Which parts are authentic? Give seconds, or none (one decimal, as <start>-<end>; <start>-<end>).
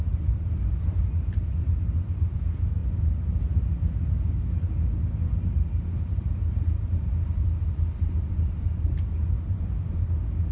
0.0-10.5